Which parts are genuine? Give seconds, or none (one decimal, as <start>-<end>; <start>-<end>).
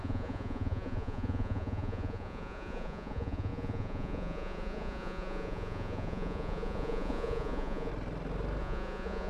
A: 7.9-8.6